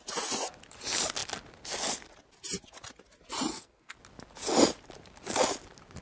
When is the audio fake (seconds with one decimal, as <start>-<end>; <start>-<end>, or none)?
3.5-4.0